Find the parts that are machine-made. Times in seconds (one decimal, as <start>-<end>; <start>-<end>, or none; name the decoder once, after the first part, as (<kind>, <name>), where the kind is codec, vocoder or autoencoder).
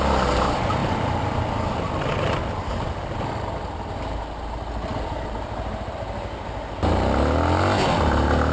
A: 0.8-1.7 (vocoder, BigVGAN v2)